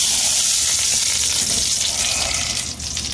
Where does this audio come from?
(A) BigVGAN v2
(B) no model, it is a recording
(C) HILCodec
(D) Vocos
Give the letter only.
B